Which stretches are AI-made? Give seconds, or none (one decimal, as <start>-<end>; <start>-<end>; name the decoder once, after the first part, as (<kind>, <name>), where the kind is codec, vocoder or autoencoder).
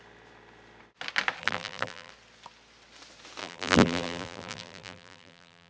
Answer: 1.4-2.1 (vocoder, BigVGAN v2); 3.4-5.7